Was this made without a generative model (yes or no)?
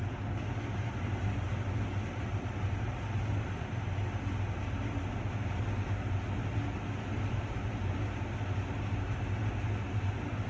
yes